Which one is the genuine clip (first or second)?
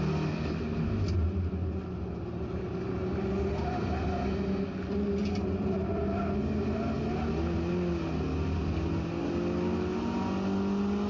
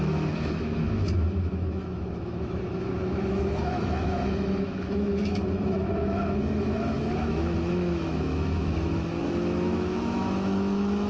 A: first